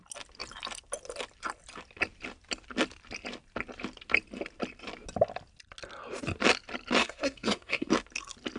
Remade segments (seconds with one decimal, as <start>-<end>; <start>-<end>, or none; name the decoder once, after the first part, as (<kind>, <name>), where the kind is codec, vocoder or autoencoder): 7.0-7.9 (codec, SNAC)